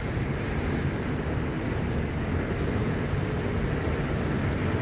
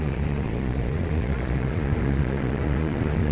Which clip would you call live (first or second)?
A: first